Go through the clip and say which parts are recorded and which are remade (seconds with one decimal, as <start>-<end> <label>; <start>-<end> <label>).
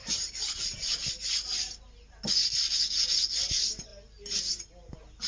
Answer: 0.0-5.3 recorded